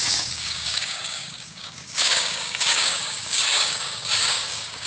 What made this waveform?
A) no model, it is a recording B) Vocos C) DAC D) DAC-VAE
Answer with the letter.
C